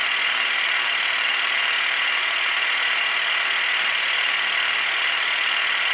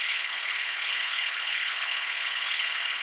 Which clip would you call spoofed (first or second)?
second